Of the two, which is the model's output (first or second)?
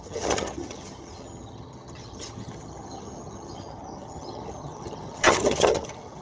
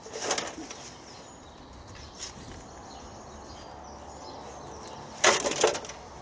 first